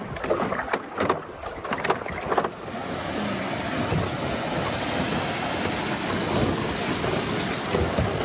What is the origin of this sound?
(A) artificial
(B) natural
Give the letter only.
B